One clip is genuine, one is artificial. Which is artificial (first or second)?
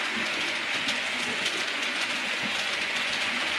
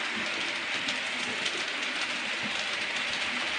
first